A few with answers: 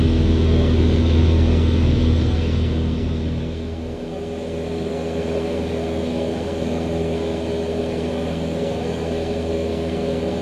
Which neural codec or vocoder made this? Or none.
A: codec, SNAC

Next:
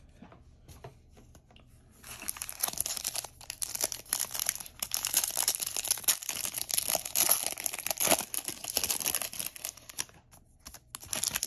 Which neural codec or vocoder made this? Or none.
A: none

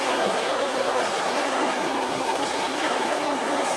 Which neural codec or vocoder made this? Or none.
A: codec, SNAC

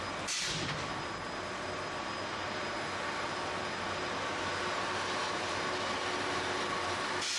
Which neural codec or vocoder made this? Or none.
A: none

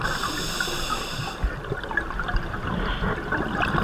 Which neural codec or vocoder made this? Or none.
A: none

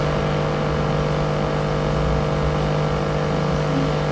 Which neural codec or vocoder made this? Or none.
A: none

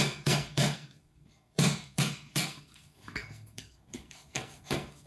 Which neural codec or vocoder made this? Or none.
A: codec, SNAC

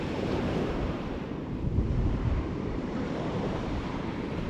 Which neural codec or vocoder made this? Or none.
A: vocoder, BigVGAN v2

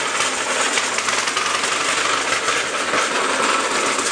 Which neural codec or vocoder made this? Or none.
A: none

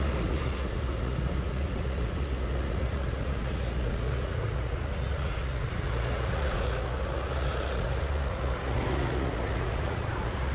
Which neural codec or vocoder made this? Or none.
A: vocoder, Vocos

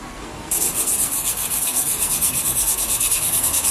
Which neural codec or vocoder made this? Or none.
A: codec, SNAC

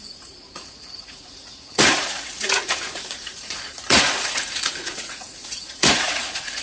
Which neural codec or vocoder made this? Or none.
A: vocoder, Vocos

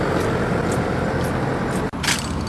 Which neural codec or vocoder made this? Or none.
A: none